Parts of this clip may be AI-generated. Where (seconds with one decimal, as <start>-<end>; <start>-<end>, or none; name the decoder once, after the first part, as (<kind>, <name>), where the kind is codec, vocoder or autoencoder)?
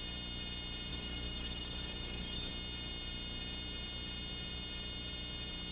0.9-2.5 (codec, DAC)